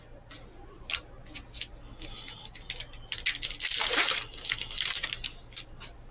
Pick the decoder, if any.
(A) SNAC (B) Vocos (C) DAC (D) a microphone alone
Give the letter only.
D